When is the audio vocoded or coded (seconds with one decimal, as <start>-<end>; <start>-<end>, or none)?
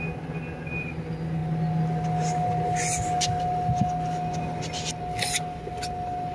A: none